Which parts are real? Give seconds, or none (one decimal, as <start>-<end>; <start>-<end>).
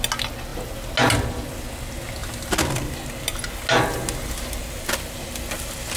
0.0-6.0